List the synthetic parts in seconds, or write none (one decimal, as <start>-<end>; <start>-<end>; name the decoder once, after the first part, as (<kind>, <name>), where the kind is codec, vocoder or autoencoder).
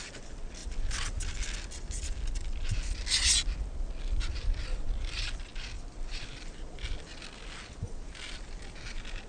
none